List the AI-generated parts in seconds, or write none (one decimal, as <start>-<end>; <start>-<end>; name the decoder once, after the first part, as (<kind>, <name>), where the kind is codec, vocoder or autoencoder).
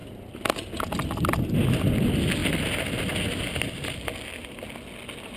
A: none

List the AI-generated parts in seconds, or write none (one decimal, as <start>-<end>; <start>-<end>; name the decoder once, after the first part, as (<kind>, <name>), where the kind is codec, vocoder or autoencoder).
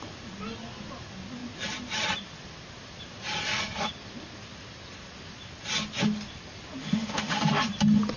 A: 6.8-7.4 (autoencoder, DAC-VAE)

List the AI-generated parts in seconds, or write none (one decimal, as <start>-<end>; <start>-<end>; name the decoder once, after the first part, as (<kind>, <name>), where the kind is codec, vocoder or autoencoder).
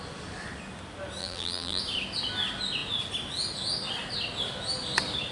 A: 1.2-1.8 (vocoder, BigVGAN v2)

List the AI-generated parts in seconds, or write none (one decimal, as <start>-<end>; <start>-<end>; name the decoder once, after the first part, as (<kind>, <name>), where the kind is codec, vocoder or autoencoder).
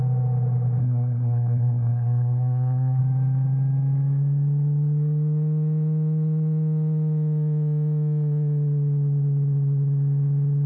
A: 0.8-3.0 (codec, SNAC)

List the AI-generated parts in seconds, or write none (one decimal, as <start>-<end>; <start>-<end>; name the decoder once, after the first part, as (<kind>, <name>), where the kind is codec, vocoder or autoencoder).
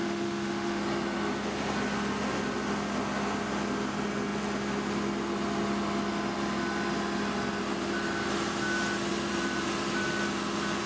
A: 0.0-0.8 (autoencoder, DAC-VAE)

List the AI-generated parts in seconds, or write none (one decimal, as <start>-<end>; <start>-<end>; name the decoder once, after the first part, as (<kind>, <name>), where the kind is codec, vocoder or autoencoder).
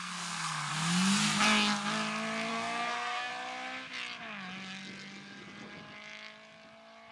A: 0.0-0.7 (codec, SNAC); 2.5-3.3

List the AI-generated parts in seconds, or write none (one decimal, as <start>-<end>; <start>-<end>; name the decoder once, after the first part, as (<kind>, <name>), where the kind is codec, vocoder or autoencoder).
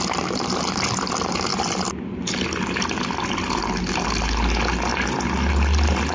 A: none